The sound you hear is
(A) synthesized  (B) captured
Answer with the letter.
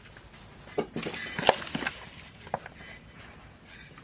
B